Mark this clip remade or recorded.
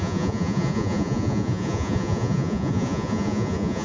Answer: remade